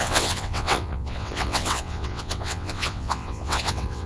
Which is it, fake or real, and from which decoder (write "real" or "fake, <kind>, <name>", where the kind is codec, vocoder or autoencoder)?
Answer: fake, vocoder, WaveNeXt